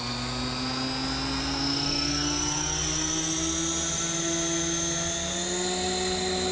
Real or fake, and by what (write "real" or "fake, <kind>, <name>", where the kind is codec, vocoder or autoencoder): real